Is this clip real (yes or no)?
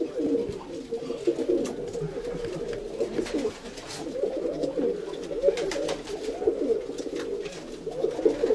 yes